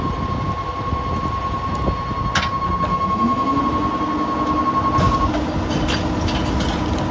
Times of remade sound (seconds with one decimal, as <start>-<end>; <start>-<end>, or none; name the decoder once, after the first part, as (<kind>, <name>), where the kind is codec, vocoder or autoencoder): 2.9-3.6 (autoencoder, DAC-VAE)